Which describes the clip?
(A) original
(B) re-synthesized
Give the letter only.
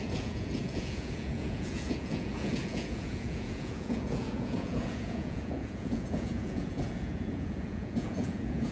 B